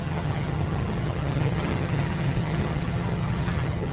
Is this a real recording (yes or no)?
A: no